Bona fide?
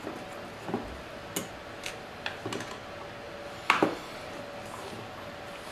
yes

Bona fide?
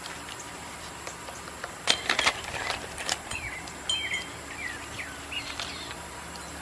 no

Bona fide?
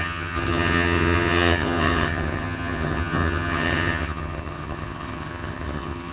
no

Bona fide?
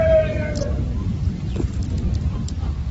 no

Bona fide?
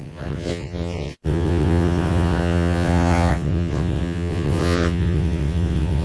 no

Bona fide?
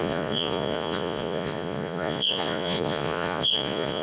no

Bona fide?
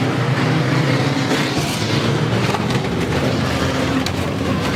no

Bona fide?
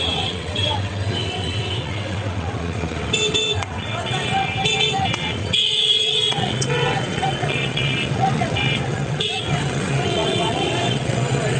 no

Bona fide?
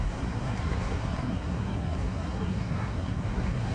no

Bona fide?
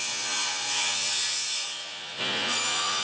no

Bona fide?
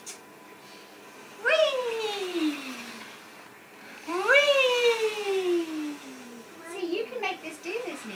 yes